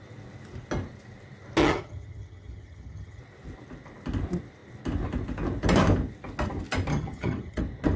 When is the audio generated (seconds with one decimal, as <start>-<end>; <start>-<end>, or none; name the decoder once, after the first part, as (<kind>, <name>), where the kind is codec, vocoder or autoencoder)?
1.6-3.2 (vocoder, HiFi-GAN); 6.9-7.6